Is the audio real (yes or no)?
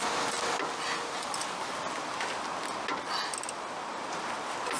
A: yes